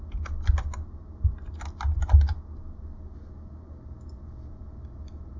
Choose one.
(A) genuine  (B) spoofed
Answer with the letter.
A